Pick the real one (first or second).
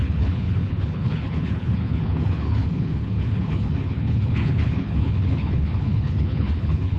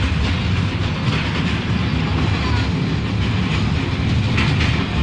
second